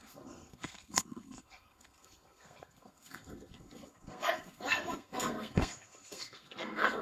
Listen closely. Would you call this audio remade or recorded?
remade